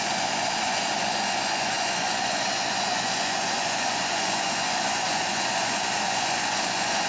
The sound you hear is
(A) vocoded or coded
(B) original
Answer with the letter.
A